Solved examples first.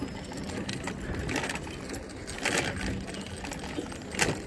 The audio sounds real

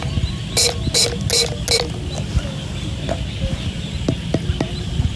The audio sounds real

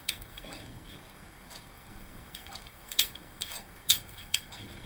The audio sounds fake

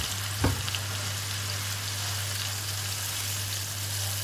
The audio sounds real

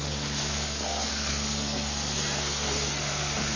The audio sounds fake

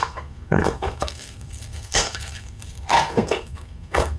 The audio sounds fake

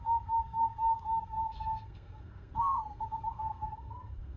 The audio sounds fake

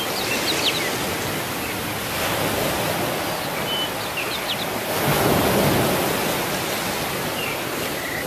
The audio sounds real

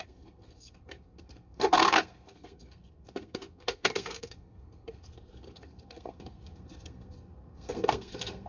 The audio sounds fake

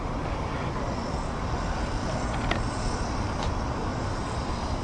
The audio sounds real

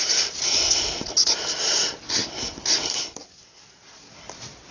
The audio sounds real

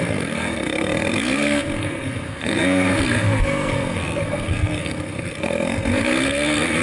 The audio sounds fake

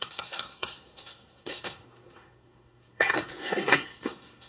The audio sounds fake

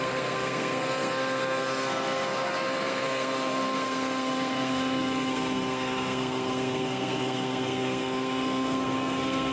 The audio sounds fake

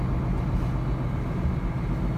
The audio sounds real